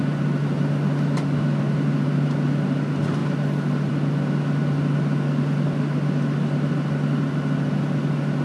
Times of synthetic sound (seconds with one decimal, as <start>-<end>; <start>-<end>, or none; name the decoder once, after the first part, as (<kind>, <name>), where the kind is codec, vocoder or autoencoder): none

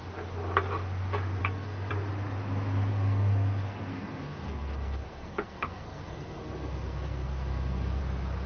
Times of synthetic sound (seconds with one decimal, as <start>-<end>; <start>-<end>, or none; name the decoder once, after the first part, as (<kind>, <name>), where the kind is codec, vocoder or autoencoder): 1.4-1.9 (codec, SNAC); 2.9-8.0

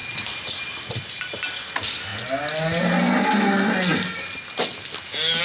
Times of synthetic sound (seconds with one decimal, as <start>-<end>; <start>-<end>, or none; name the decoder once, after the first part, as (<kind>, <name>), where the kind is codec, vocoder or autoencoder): none